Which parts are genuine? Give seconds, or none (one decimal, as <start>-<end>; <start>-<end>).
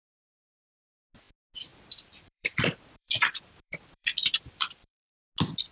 0.0-1.7; 5.1-5.7